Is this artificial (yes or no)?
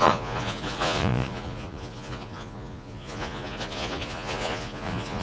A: yes